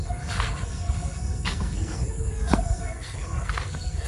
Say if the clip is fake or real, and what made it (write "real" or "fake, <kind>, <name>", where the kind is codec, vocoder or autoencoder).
fake, codec, SNAC